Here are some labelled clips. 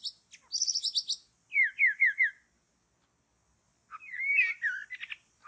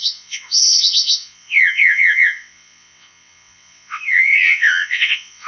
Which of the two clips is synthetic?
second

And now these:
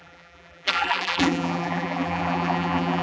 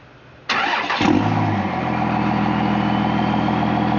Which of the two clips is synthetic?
first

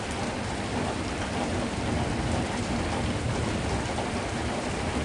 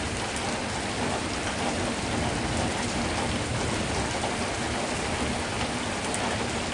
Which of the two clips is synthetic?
first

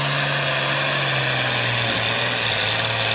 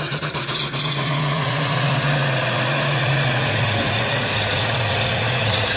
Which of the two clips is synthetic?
second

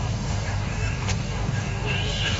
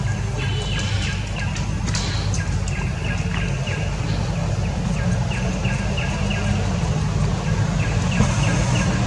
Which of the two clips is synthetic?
first